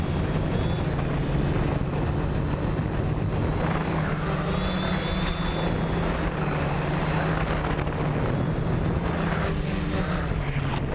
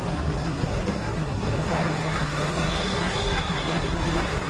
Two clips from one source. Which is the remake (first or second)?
second